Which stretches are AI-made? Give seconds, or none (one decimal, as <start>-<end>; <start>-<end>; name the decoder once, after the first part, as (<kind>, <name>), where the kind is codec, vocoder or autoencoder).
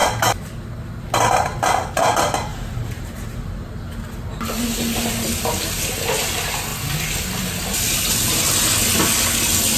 2.5-3.7 (vocoder, BigVGAN v2)